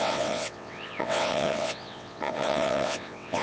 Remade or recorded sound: remade